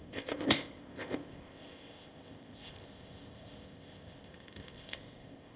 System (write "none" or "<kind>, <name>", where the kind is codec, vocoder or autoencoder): codec, ZipCodec